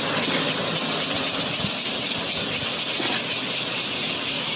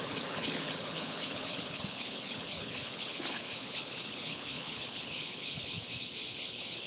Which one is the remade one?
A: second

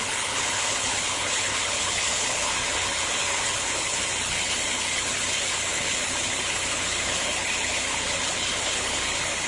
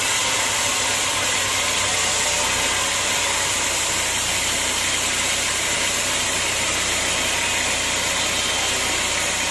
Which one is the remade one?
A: first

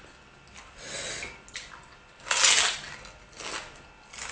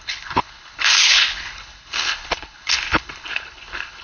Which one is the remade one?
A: second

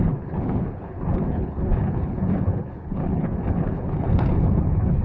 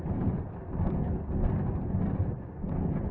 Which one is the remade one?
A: first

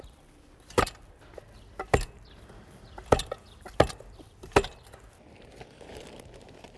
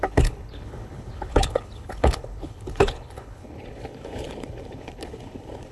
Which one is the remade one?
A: second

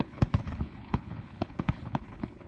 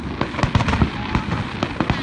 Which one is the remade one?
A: first